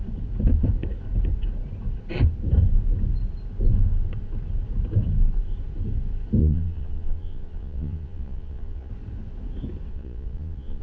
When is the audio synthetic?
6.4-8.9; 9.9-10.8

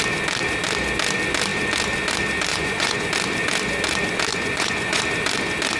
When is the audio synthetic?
2.5-3.1; 4.3-5.0

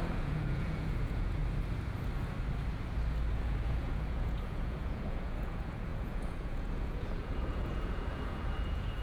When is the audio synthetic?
0.0-1.4; 3.3-9.0

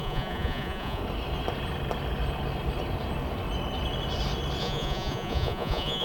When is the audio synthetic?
0.0-1.0; 4.6-6.0